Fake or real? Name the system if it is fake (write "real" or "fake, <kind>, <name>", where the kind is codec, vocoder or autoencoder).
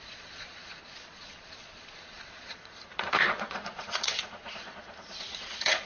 fake, vocoder, Vocos